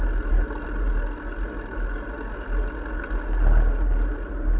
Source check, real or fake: real